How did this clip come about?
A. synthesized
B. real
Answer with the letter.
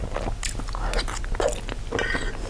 B